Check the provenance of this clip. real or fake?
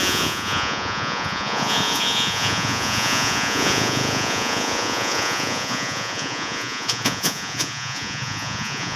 fake